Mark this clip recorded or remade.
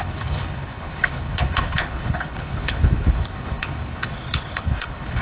remade